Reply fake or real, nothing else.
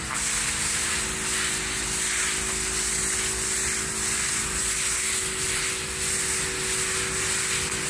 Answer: real